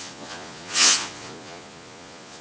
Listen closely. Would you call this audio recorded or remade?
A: remade